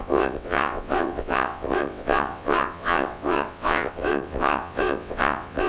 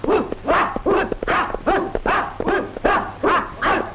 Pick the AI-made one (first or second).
first